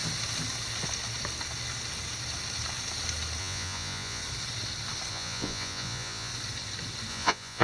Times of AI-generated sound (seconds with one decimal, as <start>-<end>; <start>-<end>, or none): 3.4-4.2; 5.1-6.3; 7.1-7.6